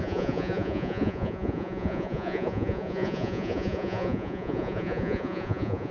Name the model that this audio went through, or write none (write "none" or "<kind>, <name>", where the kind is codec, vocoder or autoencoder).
vocoder, Vocos